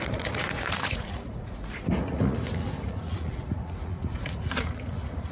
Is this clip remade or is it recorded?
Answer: remade